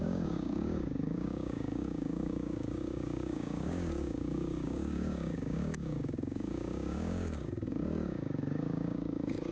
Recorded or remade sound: remade